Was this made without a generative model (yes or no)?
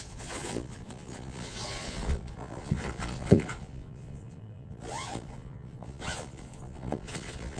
no